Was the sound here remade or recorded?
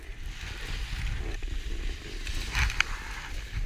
recorded